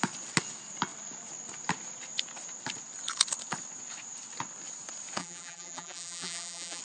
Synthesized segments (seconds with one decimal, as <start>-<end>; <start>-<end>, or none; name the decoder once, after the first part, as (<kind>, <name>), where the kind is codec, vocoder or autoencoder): 5.2-6.8 (vocoder, BigVGAN v2)